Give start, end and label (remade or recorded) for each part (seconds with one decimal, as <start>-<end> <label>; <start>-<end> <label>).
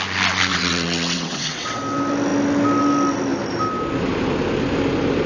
0.0-0.5 recorded; 0.5-1.8 remade; 1.8-5.3 recorded